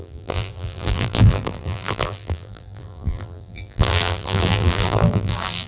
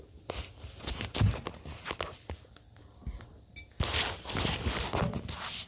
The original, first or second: second